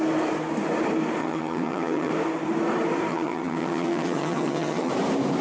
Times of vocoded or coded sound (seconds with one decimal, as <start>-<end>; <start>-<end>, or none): 1.2-2.1; 3.1-4.9